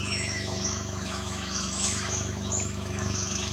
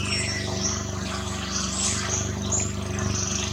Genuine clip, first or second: second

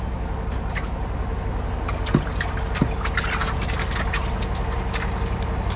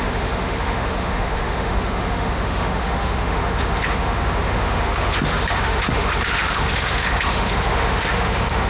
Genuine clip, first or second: first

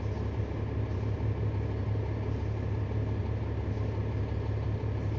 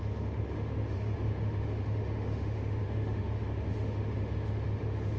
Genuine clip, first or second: first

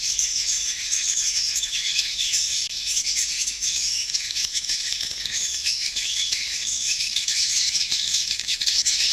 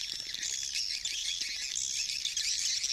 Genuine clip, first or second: second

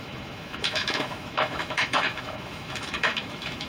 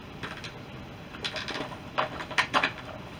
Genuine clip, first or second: second